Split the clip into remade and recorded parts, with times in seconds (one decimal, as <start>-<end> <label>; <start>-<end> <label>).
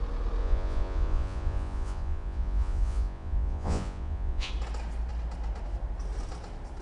0.0-0.4 recorded; 0.4-4.5 remade; 4.5-6.8 recorded